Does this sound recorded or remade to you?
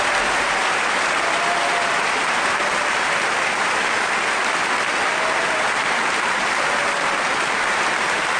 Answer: recorded